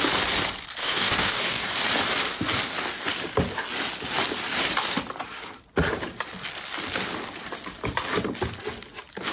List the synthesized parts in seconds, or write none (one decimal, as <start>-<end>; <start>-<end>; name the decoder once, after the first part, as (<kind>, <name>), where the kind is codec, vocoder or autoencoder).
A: 0.8-1.7 (codec, DAC)